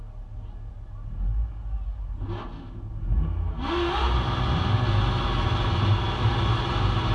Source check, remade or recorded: recorded